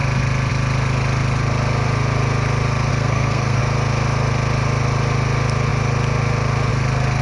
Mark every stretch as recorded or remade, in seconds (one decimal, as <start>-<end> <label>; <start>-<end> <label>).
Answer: 0.0-2.9 recorded; 2.9-3.6 remade; 3.6-7.2 recorded